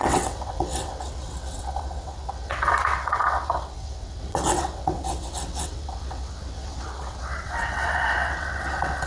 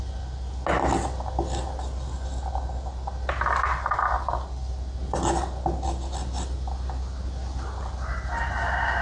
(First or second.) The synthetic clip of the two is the first